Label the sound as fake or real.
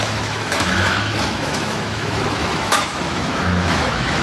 fake